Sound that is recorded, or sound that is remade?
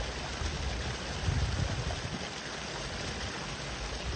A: recorded